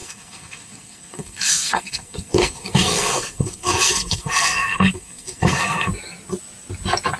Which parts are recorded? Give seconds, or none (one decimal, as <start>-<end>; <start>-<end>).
5.9-7.2

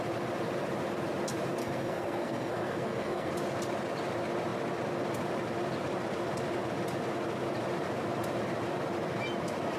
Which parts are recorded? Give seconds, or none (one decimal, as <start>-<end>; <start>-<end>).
0.0-1.6; 3.3-9.8

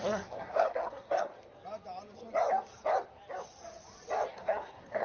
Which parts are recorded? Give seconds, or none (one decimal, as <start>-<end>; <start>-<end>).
1.3-4.3

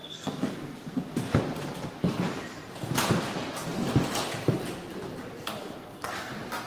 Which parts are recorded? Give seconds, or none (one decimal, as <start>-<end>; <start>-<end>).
1.4-5.6; 6.3-6.7

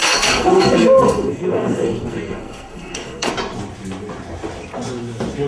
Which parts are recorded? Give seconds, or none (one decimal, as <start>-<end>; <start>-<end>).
3.3-5.5

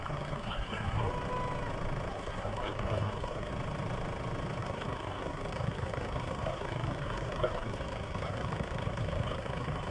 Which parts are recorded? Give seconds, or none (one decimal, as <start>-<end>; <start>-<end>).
1.1-2.1; 3.5-4.6

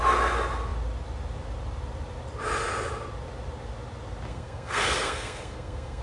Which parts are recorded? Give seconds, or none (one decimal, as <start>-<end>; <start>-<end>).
0.0-4.3

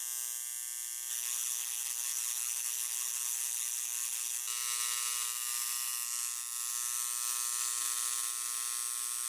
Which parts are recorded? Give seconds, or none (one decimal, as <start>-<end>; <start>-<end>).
0.0-1.1; 4.4-9.3